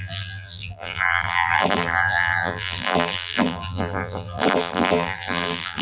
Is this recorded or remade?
remade